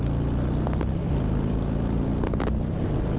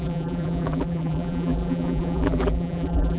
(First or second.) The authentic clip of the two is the first